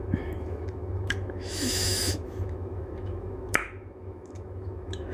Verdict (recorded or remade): remade